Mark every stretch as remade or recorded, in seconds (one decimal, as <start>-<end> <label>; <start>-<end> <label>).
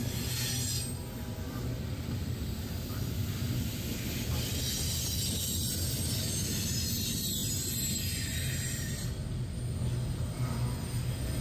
0.0-11.4 recorded